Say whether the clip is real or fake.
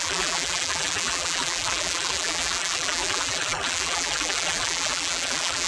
fake